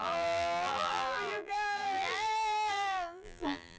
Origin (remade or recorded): remade